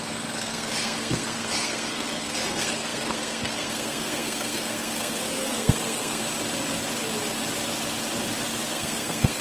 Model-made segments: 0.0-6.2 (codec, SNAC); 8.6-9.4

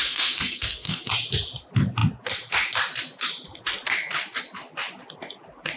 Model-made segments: 0.0-1.1 (codec, SNAC)

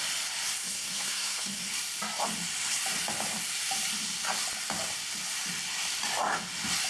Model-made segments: 0.6-1.7 (codec, SNAC)

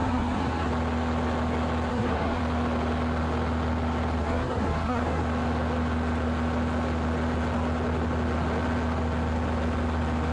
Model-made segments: 0.0-0.7 (codec, SNAC); 1.9-2.4; 4.2-5.2

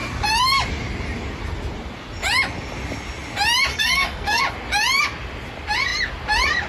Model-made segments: 3.7-4.4 (codec, SNAC)